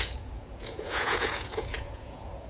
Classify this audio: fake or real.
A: fake